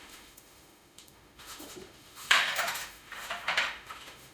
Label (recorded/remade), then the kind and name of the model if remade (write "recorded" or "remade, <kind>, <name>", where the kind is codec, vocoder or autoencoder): remade, autoencoder, DAC-VAE